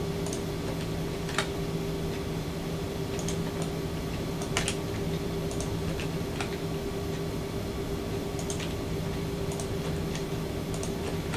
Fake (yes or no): no